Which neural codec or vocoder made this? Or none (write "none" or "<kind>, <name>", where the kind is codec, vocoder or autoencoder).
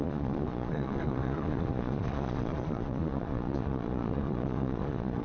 vocoder, Vocos